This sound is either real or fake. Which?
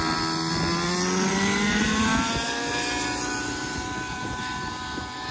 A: real